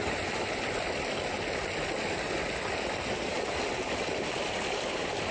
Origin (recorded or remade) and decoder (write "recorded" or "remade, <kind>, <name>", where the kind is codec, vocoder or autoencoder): recorded